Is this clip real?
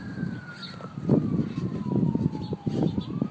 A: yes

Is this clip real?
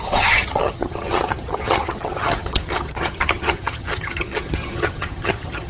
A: no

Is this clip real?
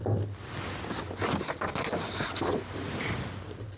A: yes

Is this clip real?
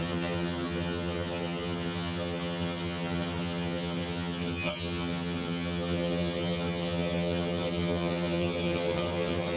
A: no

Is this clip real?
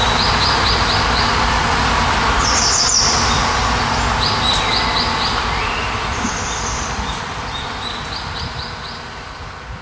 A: yes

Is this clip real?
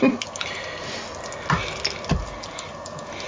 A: yes